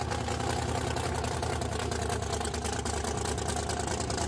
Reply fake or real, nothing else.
real